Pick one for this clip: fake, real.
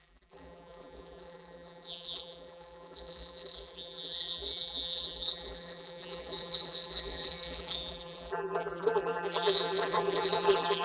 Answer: fake